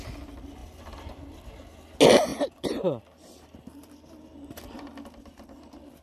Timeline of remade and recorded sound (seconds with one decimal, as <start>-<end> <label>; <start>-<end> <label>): 0.0-2.3 recorded; 2.3-3.9 remade; 3.9-6.0 recorded